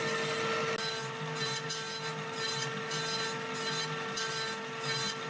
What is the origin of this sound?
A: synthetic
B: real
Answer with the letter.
B